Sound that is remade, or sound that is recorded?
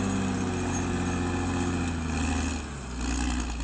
recorded